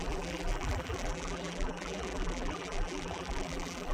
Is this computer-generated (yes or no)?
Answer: yes